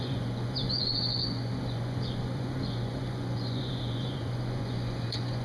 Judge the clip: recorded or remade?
remade